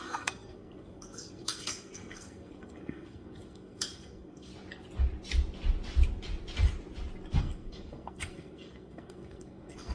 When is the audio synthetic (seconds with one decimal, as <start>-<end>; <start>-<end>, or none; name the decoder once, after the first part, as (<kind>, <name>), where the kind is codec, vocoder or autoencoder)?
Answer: 0.0-4.5 (codec, SNAC); 7.4-9.9